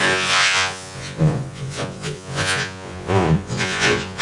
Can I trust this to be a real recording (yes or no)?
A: no